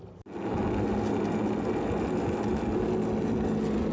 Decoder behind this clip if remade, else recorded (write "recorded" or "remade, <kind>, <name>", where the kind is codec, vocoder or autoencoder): recorded